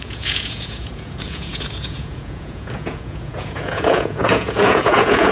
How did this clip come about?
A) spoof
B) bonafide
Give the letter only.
A